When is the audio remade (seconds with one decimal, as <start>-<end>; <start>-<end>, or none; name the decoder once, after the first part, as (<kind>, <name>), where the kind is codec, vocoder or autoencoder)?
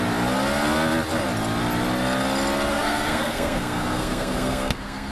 2.7-5.1 (codec, SNAC)